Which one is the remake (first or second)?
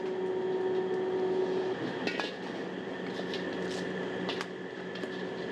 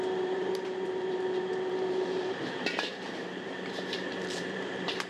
second